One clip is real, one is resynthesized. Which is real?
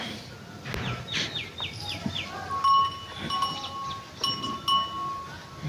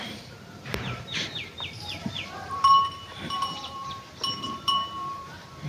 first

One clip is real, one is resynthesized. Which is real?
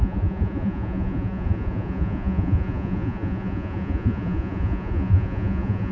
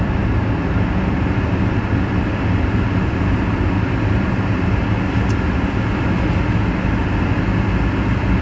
second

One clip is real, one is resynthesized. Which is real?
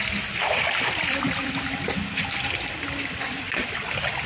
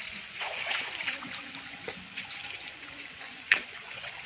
first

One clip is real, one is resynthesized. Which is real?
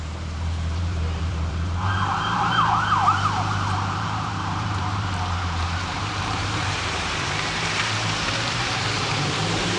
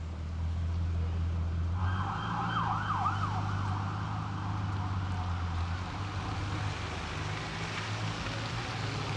second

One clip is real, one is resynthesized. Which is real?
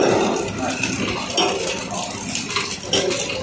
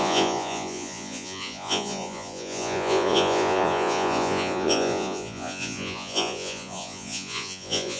first